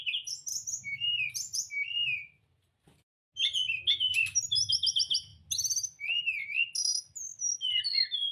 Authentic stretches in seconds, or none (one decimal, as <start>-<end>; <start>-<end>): 0.0-8.3